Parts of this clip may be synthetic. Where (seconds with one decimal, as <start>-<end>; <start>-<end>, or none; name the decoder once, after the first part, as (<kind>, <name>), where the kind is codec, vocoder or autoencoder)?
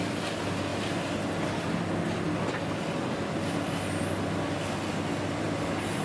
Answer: none